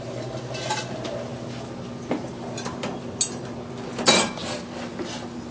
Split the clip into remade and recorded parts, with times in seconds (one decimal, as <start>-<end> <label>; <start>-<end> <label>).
0.0-5.5 recorded